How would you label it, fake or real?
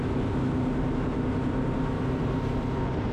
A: real